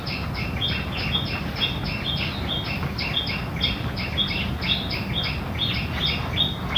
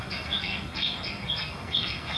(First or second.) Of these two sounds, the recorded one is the first